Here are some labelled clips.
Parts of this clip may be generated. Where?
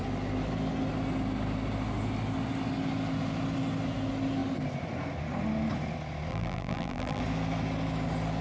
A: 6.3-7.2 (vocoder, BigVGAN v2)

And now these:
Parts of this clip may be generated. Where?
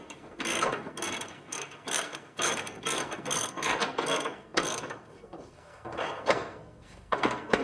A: 0.0-7.6 (codec, SNAC)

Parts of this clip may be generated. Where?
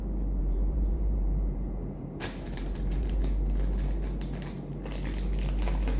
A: 0.4-3.2 (vocoder, BigVGAN v2)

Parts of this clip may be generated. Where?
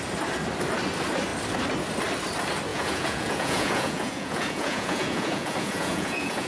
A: 2.7-6.5 (vocoder, Vocos)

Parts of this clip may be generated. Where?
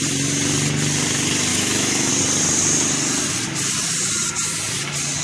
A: 1.5-2.1 (autoencoder, DAC-VAE)